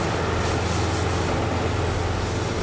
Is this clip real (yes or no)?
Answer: yes